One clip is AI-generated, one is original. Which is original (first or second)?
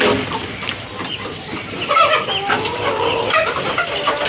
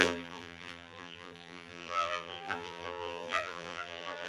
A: first